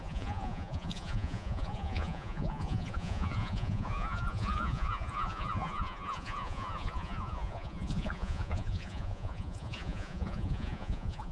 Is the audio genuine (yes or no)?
no